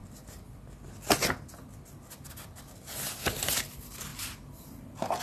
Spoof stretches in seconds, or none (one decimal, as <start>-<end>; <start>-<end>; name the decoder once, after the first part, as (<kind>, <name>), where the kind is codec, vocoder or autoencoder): none